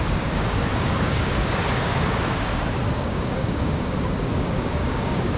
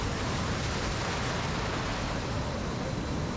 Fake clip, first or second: first